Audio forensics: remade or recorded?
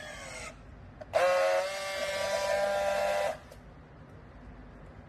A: recorded